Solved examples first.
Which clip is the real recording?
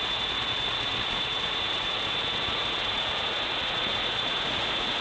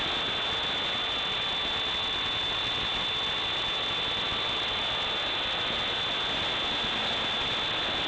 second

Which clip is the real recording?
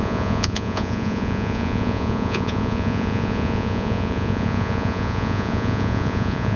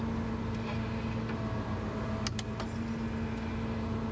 second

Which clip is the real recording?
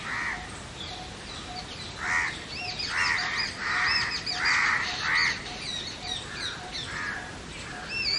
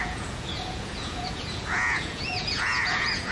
first